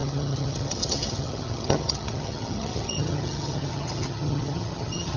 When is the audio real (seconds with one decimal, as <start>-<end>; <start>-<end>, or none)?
none